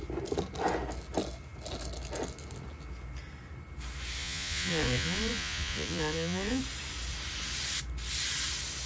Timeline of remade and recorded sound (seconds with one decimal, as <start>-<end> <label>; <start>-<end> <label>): 0.0-4.2 recorded; 4.2-6.6 remade; 6.6-8.9 recorded